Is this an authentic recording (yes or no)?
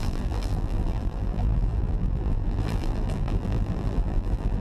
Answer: no